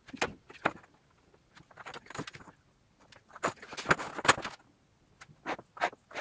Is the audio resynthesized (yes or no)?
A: no